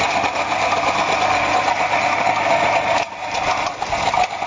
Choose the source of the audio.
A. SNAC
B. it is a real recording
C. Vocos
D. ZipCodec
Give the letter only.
B